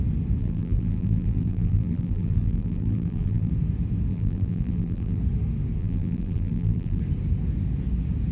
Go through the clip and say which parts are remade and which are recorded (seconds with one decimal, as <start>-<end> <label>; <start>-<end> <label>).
0.0-0.4 recorded; 0.4-3.5 remade; 3.5-4.1 recorded; 4.1-5.2 remade; 5.2-5.8 recorded; 5.8-7.0 remade; 7.0-8.3 recorded